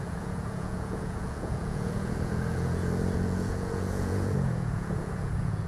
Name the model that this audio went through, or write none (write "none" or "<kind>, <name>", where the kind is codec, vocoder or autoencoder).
vocoder, Vocos